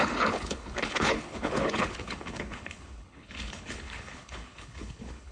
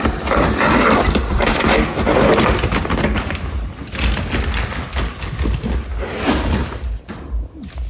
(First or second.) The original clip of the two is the second